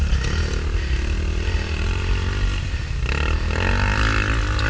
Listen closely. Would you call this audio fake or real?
real